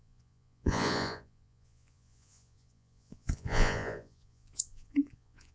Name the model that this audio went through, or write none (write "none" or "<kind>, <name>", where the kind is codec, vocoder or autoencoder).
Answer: vocoder, Vocos